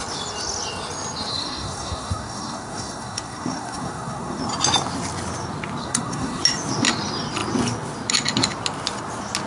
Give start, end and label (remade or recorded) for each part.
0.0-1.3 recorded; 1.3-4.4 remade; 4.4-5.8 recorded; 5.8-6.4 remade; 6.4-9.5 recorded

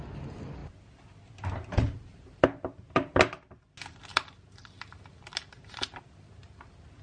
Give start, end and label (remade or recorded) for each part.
0.0-7.0 recorded

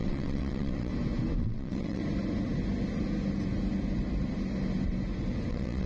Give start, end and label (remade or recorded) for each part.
0.0-0.9 remade; 0.9-1.4 recorded; 1.4-2.0 remade; 2.0-5.5 recorded; 5.5-5.9 remade

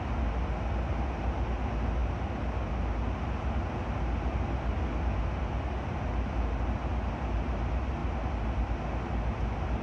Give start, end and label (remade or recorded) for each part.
0.0-8.0 recorded; 8.0-8.8 remade; 8.8-9.8 recorded

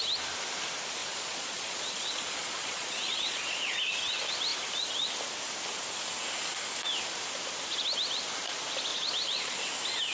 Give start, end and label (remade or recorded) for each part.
0.0-1.0 recorded; 1.0-3.6 remade; 3.6-8.9 recorded; 8.9-9.6 remade; 9.6-10.1 recorded

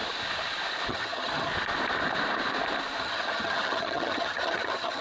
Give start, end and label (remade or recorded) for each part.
0.0-0.9 recorded; 0.9-1.5 remade; 1.5-3.0 recorded; 3.0-5.0 remade